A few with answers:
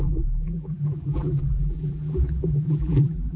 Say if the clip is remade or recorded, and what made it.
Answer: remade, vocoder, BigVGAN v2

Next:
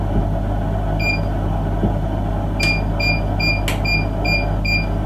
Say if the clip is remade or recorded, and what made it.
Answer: recorded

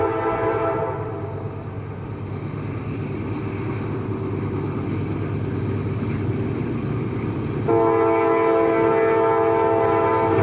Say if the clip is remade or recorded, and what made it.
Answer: recorded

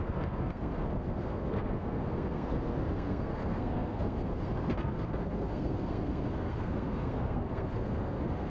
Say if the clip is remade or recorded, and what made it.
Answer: remade, codec, SNAC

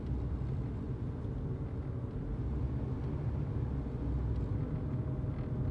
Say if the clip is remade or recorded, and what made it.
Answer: recorded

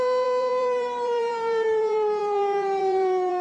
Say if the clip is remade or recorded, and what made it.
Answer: remade, vocoder, BigVGAN v2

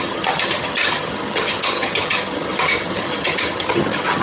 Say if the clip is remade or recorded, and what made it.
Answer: remade, vocoder, HiFi-GAN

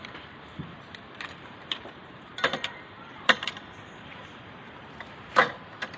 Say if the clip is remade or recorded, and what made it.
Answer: remade, vocoder, BigVGAN v2